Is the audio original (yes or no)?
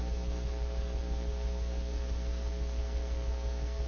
no